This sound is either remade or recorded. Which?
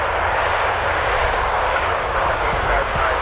remade